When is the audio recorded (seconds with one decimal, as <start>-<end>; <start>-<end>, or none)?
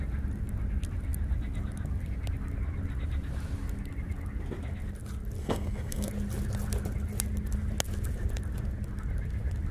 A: 0.0-5.4; 6.1-9.7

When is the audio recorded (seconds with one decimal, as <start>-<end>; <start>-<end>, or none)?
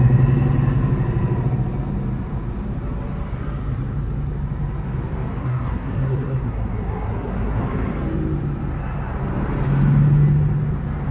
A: 0.0-5.4; 7.6-11.1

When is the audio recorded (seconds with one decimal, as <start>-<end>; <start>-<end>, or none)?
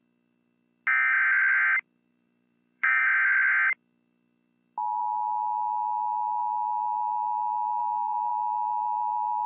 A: 0.0-2.1; 3.0-7.8; 8.3-9.5